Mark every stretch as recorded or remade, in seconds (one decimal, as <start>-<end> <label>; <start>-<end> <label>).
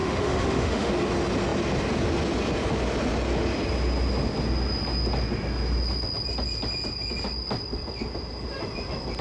0.0-0.9 remade; 0.9-9.2 recorded